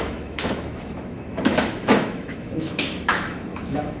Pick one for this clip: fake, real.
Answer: fake